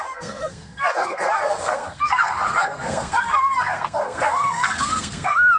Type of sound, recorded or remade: remade